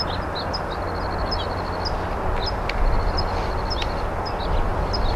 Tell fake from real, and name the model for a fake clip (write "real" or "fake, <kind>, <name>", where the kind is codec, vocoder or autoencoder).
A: real